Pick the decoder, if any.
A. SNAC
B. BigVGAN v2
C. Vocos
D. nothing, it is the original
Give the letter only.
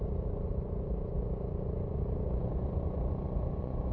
C